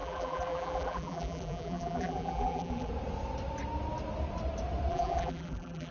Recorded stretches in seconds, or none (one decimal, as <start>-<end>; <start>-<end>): 2.9-4.9